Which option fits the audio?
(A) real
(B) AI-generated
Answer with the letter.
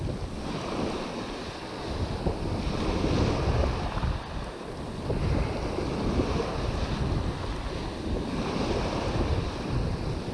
A